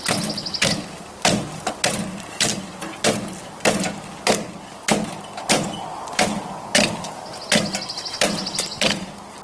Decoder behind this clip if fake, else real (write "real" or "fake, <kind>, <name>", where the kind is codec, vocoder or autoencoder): real